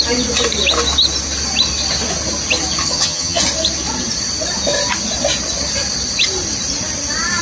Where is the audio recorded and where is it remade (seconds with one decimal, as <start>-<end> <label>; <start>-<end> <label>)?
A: 0.0-2.8 recorded; 2.8-3.4 remade; 3.4-7.4 recorded